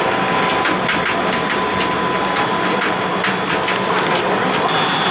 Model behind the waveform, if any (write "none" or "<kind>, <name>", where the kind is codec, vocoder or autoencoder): none